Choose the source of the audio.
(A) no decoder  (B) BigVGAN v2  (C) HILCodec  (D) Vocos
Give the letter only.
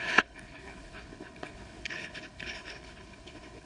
C